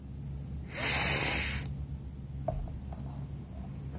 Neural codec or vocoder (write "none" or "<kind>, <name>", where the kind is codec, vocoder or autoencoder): none